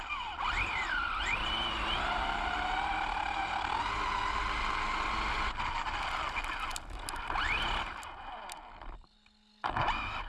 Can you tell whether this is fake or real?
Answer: real